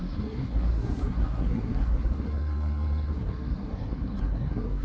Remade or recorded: remade